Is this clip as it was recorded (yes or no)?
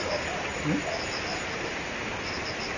yes